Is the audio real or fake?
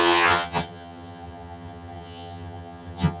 fake